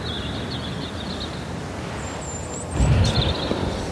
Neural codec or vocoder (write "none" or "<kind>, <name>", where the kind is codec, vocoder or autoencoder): none